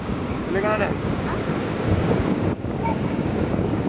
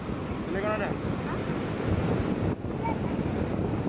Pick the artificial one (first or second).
first